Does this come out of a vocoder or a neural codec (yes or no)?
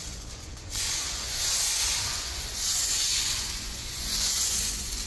yes